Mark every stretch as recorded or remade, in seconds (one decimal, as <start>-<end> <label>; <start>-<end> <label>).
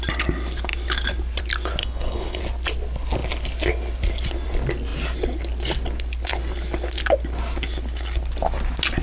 0.0-1.8 recorded; 1.8-2.4 remade; 2.4-9.0 recorded